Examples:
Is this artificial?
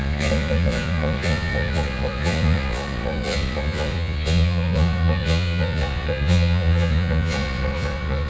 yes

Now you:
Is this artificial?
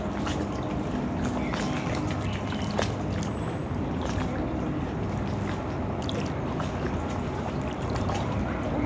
no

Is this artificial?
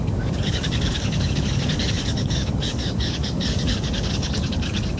yes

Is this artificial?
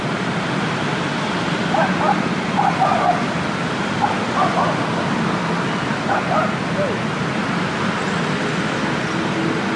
no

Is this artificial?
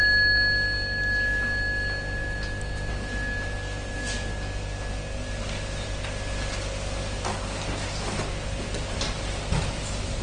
no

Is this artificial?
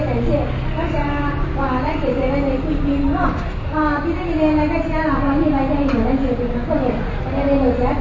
no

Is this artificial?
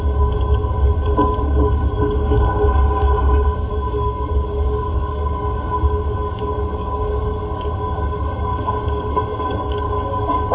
yes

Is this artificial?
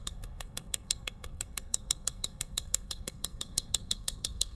yes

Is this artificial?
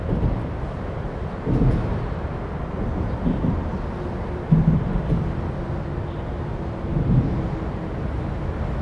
no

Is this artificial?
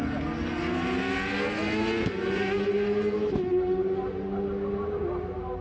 no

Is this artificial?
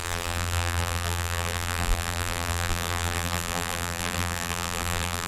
yes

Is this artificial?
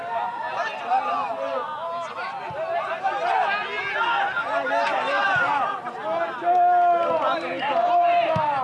no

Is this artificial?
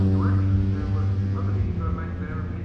no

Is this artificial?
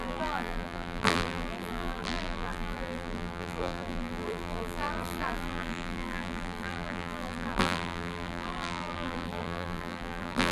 yes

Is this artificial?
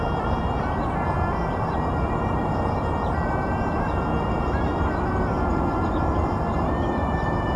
yes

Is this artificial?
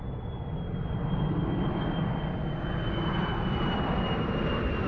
no